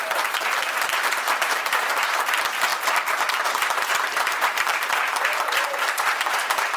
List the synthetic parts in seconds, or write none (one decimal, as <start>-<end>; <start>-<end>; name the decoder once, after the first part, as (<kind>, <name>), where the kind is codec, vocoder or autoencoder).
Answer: 0.0-6.8 (vocoder, BigVGAN v2)